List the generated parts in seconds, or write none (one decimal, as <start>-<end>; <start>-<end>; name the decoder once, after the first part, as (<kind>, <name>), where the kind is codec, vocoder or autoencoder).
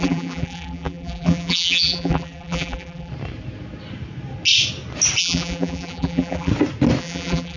0.0-3.1 (vocoder, BigVGAN v2); 5.2-6.5; 7.0-7.6